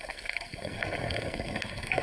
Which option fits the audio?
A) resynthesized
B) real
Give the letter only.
A